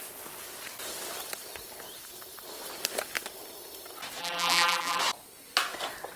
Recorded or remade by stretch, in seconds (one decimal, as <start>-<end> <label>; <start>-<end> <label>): 0.0-4.2 recorded; 4.2-5.0 remade; 5.0-6.2 recorded